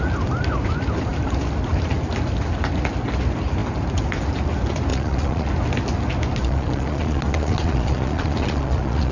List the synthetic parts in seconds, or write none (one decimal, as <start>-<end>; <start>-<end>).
4.9-5.5; 6.4-9.1